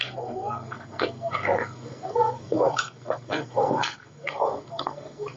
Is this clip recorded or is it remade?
remade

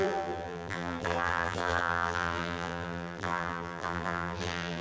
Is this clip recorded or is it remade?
remade